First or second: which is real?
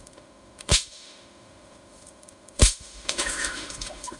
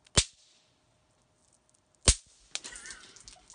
second